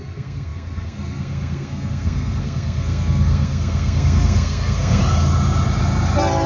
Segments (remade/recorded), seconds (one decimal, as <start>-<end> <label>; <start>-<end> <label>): 0.0-5.0 remade; 5.0-6.5 recorded